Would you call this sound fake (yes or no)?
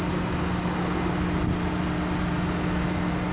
no